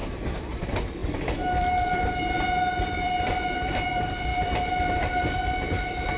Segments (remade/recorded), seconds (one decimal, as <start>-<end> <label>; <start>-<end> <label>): 0.0-0.6 recorded; 0.6-6.2 remade